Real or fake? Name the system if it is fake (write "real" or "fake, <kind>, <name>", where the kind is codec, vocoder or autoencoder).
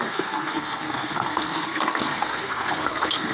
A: fake, codec, SNAC